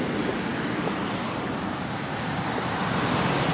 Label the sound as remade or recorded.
recorded